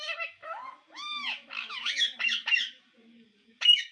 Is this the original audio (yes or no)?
no